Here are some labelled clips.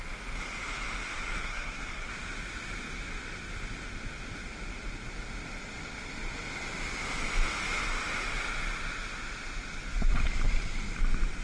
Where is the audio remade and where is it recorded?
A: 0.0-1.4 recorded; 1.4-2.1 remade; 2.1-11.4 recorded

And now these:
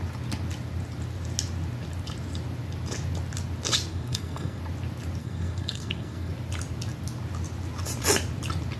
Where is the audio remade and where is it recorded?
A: 0.0-3.9 recorded; 3.9-4.6 remade; 4.6-5.2 recorded; 5.2-6.3 remade; 6.3-8.8 recorded